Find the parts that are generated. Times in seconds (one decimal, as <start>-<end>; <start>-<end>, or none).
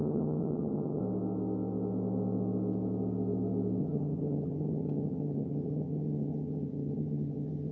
0.0-1.0; 3.8-7.7